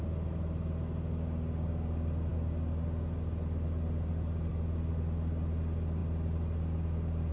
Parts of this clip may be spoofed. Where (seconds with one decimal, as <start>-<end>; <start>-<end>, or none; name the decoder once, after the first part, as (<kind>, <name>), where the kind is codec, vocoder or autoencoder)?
none